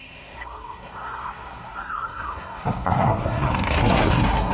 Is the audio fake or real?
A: fake